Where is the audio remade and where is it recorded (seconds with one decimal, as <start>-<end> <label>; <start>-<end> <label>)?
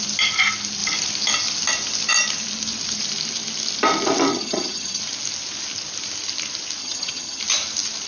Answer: 0.0-4.3 recorded; 4.3-5.0 remade; 5.0-6.8 recorded; 6.8-7.4 remade; 7.4-8.1 recorded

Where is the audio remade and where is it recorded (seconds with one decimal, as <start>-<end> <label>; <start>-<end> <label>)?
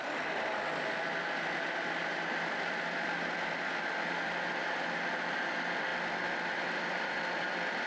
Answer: 0.0-7.9 recorded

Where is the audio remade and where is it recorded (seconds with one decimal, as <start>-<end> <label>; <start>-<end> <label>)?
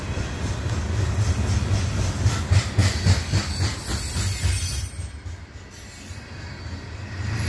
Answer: 0.0-7.5 recorded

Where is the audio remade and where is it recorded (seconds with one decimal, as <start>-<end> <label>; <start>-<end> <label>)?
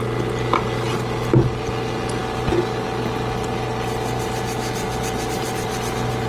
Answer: 0.0-6.3 recorded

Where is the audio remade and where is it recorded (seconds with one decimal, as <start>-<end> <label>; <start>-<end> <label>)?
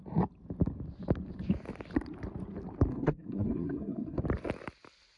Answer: 0.0-2.9 recorded; 2.9-4.2 remade; 4.2-5.2 recorded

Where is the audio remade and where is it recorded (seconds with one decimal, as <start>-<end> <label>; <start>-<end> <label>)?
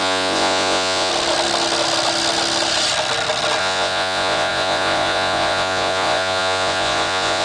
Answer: 0.0-1.1 remade; 1.1-3.6 recorded; 3.6-7.4 remade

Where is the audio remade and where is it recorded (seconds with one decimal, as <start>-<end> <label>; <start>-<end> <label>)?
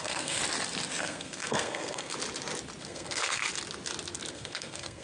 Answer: 0.0-0.4 remade; 0.4-1.0 recorded; 1.0-2.1 remade; 2.1-2.8 recorded; 2.8-3.4 remade; 3.4-4.3 recorded; 4.3-5.0 remade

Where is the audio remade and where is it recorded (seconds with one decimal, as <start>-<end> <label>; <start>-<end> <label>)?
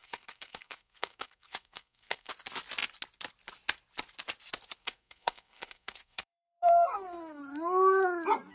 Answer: 0.0-2.3 remade; 2.3-4.8 recorded; 4.8-7.4 remade; 7.4-8.5 recorded